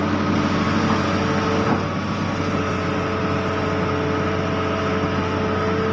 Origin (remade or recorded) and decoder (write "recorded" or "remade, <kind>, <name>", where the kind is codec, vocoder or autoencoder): recorded